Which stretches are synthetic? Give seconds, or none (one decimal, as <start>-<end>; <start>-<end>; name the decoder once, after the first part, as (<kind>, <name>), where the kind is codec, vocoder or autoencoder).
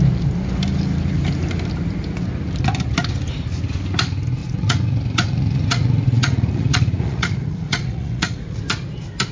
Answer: 4.4-8.6 (vocoder, Vocos)